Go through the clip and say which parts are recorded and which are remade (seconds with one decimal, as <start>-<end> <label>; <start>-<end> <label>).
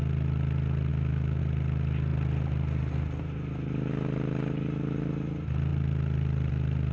0.0-0.9 recorded; 0.9-1.4 remade; 1.4-6.9 recorded